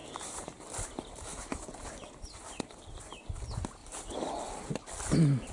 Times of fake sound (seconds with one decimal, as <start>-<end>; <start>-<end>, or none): 0.0-0.8; 1.3-2.7; 3.8-4.3